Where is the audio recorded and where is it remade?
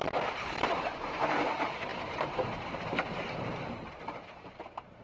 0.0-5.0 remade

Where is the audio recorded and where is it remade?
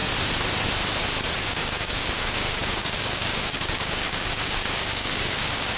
0.0-1.3 recorded; 1.3-5.8 remade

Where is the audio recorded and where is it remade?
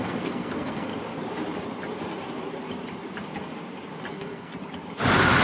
0.0-0.9 remade; 0.9-4.1 recorded; 4.1-4.5 remade; 4.5-5.4 recorded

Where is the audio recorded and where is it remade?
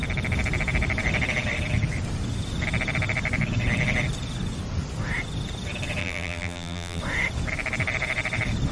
0.0-6.0 recorded; 6.0-7.0 remade; 7.0-8.7 recorded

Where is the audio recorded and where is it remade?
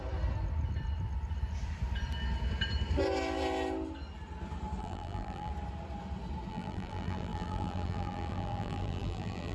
0.0-4.8 recorded; 4.8-5.5 remade; 5.5-6.5 recorded; 6.5-9.5 remade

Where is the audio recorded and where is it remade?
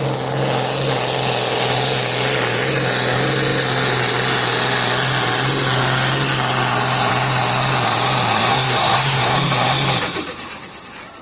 0.0-8.5 recorded; 8.5-9.3 remade; 9.3-11.2 recorded